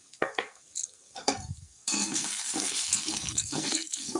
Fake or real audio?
fake